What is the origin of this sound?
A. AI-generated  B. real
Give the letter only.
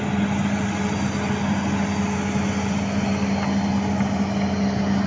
B